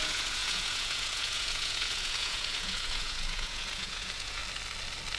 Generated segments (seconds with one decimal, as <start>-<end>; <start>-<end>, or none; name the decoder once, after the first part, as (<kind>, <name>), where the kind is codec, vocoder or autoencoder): 0.0-4.4 (vocoder, Vocos)